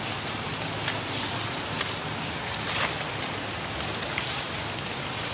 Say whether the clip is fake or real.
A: real